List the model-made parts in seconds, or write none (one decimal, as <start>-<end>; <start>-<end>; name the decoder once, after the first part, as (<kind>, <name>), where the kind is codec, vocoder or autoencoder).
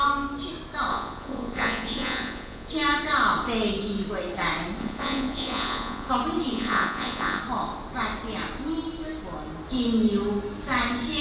0.9-2.7 (vocoder, Vocos); 4.8-6.1; 6.5-7.4